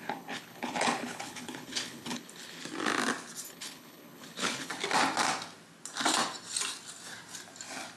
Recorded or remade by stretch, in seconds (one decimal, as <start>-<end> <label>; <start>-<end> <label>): 0.0-2.6 remade; 2.6-3.5 recorded; 3.5-4.7 remade; 4.7-8.0 recorded